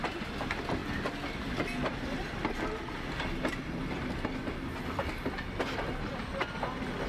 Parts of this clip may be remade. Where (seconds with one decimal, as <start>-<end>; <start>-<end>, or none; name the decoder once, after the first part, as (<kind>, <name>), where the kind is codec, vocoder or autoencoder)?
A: none